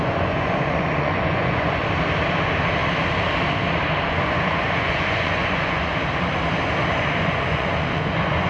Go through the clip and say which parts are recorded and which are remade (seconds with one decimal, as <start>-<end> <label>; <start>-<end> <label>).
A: 0.0-1.8 remade; 1.8-4.0 recorded; 4.0-5.9 remade; 5.9-6.9 recorded; 6.9-8.5 remade